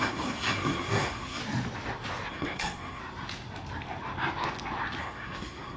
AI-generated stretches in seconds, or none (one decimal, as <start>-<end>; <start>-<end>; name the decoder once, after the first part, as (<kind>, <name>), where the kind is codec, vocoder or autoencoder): 0.0-1.4 (codec, SNAC); 2.3-3.0; 5.0-5.8

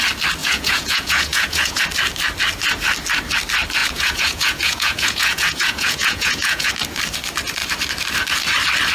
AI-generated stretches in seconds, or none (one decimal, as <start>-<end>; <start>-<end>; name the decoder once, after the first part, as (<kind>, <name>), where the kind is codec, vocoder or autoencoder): 0.4-1.8 (vocoder, Vocos); 3.8-6.7

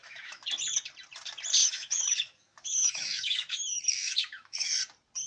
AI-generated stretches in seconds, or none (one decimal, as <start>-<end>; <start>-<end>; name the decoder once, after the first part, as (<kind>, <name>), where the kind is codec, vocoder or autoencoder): 0.0-0.5 (autoencoder, DAC-VAE); 1.6-4.8

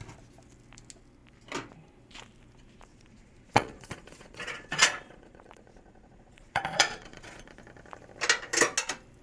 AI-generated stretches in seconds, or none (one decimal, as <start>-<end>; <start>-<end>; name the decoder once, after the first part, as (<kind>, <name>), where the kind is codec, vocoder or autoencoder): 2.9-7.6 (vocoder, Vocos)

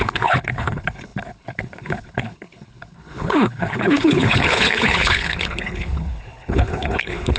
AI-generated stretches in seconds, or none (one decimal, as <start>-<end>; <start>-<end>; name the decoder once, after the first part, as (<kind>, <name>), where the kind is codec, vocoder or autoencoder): 0.0-7.4 (codec, HILCodec)

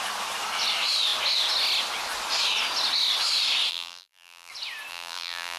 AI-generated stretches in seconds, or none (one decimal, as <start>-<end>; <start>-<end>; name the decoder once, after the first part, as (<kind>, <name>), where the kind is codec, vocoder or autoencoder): 3.7-4.5 (vocoder, BigVGAN v2); 4.9-5.6

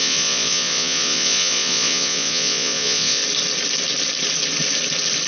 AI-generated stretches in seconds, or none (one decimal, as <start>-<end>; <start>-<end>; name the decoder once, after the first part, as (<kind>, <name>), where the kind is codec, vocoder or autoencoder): 0.0-3.2 (vocoder, Vocos)

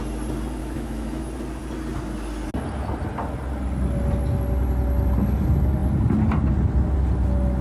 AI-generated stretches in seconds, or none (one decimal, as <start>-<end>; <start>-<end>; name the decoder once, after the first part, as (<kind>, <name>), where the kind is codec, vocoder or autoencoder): 0.6-1.2 (autoencoder, DAC-VAE)